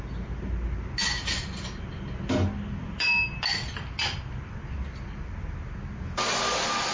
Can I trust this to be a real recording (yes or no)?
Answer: yes